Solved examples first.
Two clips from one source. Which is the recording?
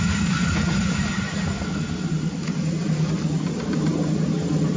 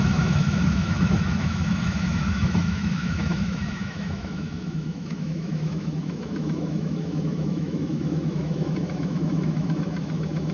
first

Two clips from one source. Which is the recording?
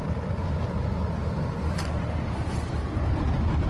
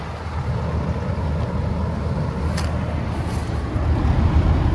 second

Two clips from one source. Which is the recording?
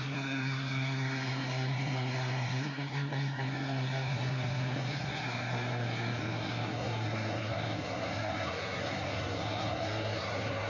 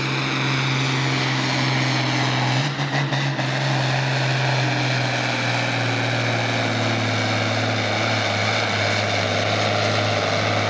second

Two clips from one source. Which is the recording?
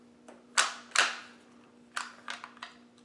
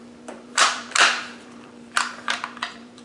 first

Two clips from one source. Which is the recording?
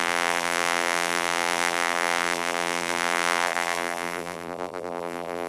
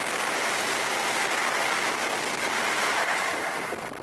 second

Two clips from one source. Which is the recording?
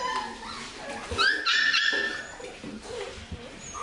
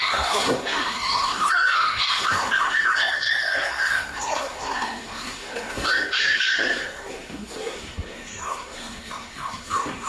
first